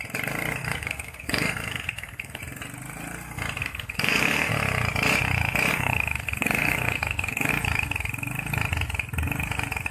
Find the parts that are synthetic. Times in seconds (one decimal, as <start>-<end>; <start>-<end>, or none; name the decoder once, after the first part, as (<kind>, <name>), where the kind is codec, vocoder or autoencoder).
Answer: 0.6-2.4 (codec, SNAC); 3.6-4.5; 5.7-7.5